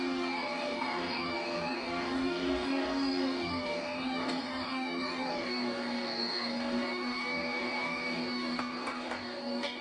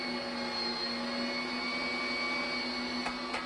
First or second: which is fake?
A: first